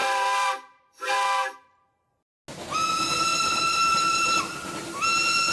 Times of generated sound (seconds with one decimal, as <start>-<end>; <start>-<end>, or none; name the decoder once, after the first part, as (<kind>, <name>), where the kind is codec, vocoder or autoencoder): 0.0-2.1 (vocoder, BigVGAN v2); 3.3-4.4